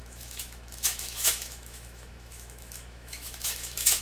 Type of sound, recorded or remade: remade